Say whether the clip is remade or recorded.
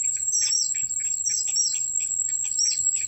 remade